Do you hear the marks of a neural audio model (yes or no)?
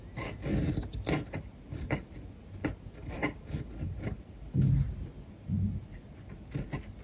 no